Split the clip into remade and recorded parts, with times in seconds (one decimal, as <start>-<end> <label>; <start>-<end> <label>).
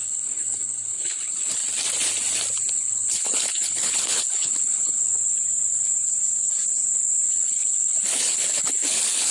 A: 0.0-1.6 remade; 1.6-2.7 recorded; 2.7-5.1 remade; 5.1-7.3 recorded; 7.3-9.3 remade